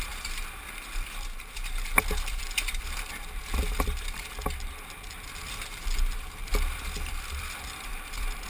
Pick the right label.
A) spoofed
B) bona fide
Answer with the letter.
A